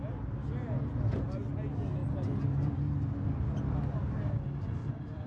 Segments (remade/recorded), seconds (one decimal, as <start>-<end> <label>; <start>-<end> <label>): 0.0-4.8 recorded; 4.8-5.3 remade